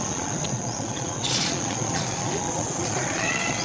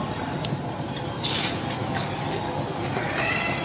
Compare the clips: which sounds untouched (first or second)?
second